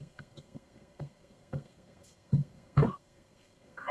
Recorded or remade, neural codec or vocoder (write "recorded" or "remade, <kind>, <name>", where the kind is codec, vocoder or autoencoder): remade, codec, SNAC